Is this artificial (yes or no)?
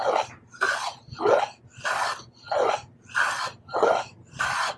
no